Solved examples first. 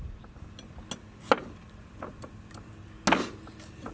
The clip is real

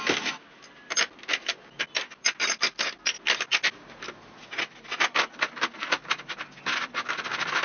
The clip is real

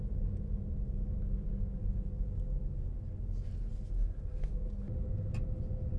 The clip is real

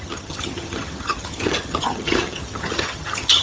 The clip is fake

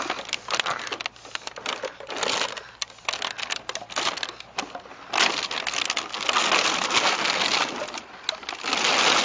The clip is real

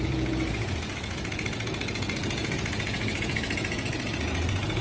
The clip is fake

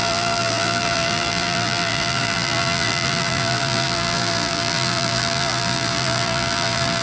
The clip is fake